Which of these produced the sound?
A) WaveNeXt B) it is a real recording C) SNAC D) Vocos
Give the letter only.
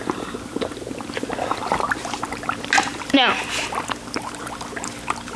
B